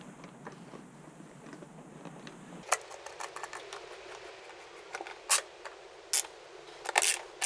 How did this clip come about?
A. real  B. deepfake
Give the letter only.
A